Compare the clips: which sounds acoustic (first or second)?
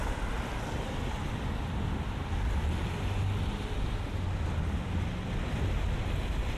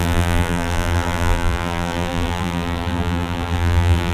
first